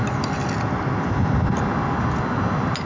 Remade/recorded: recorded